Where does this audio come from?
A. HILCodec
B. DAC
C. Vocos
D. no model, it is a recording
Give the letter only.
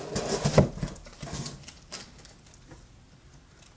D